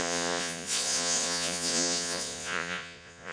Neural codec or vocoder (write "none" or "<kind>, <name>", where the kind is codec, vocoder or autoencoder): vocoder, Vocos